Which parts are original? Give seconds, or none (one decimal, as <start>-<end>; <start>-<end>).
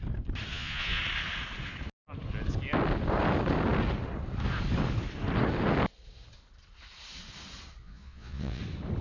0.0-0.5; 1.0-7.8; 8.6-9.0